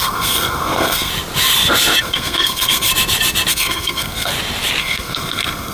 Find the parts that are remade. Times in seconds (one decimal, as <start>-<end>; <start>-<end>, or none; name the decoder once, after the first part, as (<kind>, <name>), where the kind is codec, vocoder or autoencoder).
0.0-1.1 (codec, SNAC); 2.0-2.9; 3.5-4.3; 4.8-5.7